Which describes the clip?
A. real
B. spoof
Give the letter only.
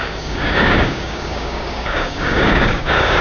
B